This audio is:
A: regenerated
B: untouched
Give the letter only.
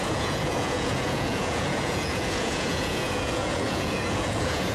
A